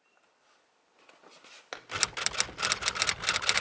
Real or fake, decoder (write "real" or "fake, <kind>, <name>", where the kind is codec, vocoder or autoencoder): real